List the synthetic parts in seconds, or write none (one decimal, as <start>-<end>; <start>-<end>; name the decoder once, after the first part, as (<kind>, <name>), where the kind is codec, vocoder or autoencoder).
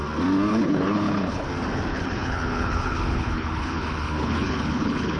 0.5-1.5 (codec, HILCodec); 1.9-5.2